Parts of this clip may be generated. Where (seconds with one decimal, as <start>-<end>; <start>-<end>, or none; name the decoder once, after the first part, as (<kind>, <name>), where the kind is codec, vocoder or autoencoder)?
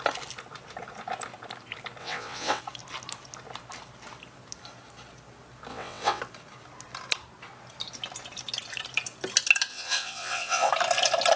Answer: 2.0-2.6 (vocoder, WaveNeXt); 5.7-6.2; 9.7-10.7